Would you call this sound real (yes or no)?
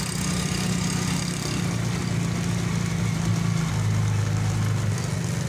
yes